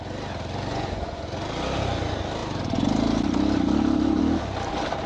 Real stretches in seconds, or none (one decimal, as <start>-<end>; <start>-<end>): 0.0-0.7; 1.3-5.1